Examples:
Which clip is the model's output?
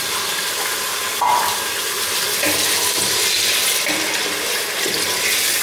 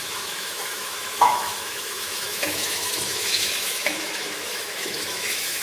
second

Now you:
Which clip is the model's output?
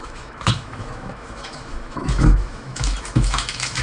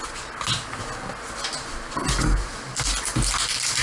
first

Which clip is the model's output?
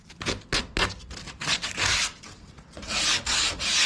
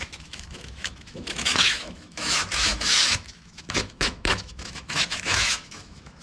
second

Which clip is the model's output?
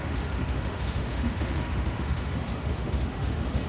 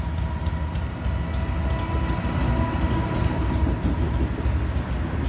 first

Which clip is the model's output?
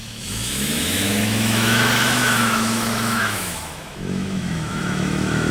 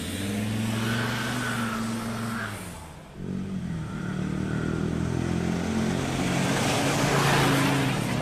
first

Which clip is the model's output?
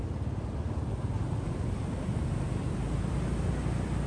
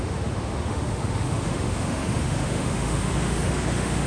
second